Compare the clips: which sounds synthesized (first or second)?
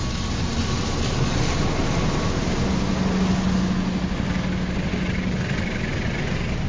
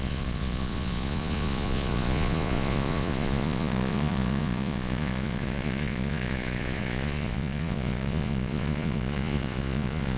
second